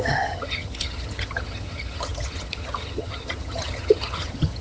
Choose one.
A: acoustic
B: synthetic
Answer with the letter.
B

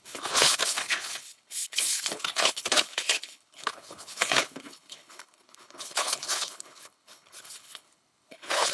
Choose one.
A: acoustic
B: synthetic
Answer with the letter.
B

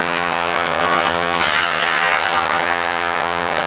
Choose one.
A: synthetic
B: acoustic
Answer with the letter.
A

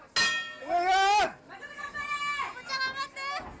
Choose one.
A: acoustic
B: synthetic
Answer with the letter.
A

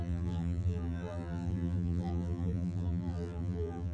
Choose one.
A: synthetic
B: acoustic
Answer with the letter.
A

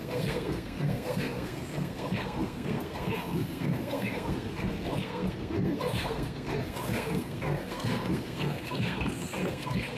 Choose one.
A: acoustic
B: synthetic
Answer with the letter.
B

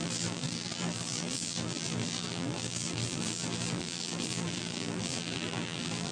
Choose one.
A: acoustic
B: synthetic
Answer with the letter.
B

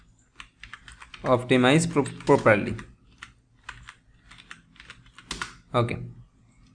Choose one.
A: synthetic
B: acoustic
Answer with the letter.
B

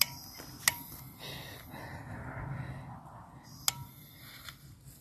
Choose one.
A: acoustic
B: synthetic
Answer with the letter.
A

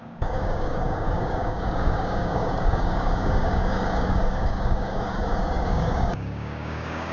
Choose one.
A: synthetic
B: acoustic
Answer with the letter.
A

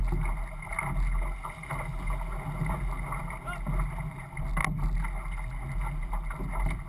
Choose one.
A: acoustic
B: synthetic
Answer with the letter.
A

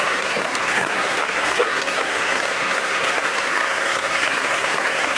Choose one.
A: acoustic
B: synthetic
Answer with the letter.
B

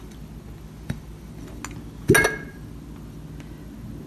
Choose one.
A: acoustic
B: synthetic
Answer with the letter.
A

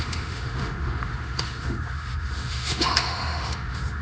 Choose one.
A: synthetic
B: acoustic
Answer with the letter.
A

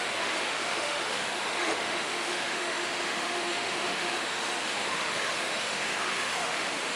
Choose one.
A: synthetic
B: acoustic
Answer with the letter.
A